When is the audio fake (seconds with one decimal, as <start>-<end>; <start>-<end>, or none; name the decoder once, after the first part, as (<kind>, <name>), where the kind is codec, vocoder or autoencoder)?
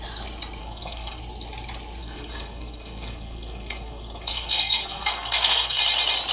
0.6-1.2 (codec, SNAC); 2.0-5.8